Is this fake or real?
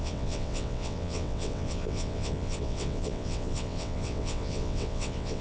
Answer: fake